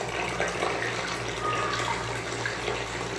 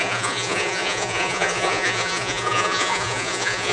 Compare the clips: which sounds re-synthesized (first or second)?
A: second